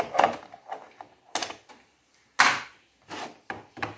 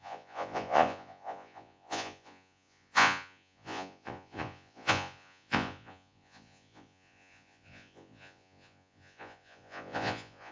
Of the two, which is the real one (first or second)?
first